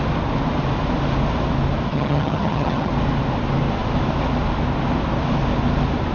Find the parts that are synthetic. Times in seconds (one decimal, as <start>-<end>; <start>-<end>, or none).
1.9-2.9